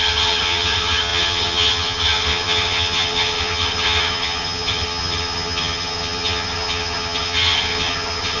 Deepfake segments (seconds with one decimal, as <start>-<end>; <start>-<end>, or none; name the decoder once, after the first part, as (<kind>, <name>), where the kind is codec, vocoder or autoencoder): 0.0-8.4 (vocoder, HiFi-GAN)